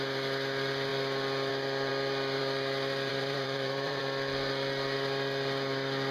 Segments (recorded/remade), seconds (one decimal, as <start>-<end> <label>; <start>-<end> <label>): 0.0-3.1 recorded; 3.1-4.0 remade; 4.0-6.1 recorded